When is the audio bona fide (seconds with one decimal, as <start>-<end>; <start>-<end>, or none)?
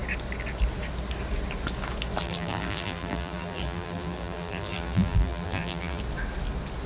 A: 0.0-2.2; 6.0-6.9